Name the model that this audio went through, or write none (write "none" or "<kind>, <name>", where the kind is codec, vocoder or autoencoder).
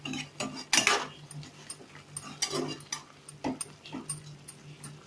none